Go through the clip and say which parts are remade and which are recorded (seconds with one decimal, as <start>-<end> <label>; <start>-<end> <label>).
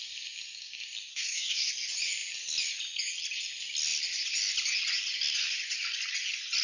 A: 0.0-1.1 recorded; 1.1-1.7 remade; 1.7-6.6 recorded